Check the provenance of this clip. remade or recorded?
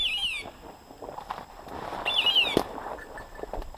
recorded